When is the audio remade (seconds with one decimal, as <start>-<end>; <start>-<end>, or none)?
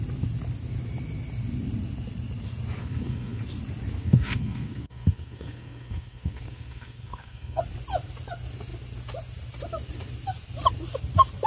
2.8-3.4; 4.0-7.6